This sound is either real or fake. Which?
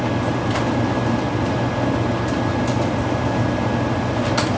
real